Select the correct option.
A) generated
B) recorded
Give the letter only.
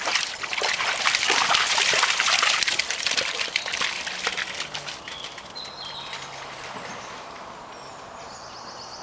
B